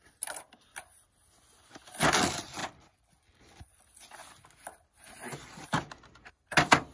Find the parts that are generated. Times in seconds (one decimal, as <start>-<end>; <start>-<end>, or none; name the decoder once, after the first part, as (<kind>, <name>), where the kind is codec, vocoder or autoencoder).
none

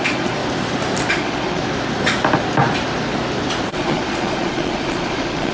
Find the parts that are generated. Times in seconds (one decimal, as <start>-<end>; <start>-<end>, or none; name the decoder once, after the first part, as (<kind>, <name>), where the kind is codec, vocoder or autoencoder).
0.0-0.4 (vocoder, Vocos); 1.1-1.6; 3.7-5.5

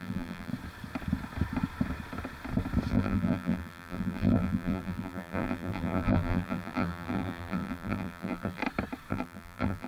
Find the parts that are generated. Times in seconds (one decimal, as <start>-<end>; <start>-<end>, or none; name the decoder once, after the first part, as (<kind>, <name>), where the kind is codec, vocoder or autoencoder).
0.0-0.5 (vocoder, BigVGAN v2); 2.9-8.6; 9.1-9.9